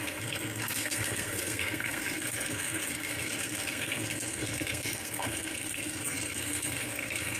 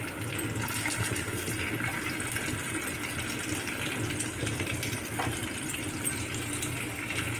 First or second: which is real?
second